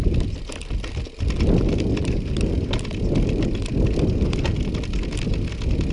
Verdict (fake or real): real